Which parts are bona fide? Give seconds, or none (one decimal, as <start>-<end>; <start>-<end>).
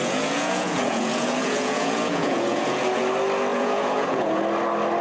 3.0-3.5; 4.4-5.0